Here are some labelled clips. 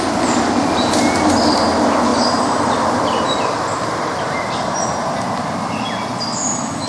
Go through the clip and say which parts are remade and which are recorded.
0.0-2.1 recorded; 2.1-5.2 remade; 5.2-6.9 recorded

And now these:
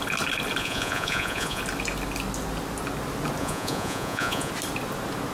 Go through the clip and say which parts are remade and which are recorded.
0.0-0.6 recorded; 0.6-1.6 remade; 1.6-3.4 recorded; 3.4-4.5 remade; 4.5-5.3 recorded

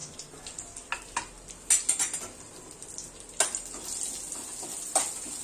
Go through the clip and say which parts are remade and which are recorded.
0.0-5.4 recorded